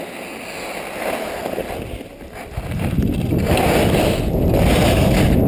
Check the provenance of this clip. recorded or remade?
recorded